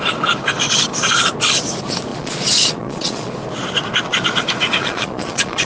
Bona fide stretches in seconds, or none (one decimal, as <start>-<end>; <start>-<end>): 0.0-2.1; 3.3-4.8